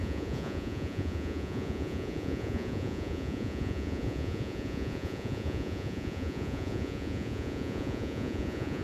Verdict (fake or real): fake